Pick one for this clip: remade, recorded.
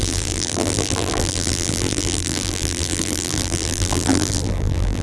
remade